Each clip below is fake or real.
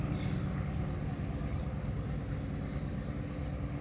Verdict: real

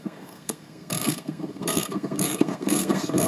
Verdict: fake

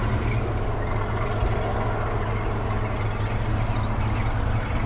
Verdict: real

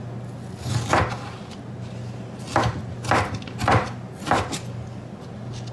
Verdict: real